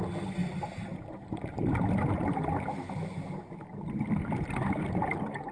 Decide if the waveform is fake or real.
real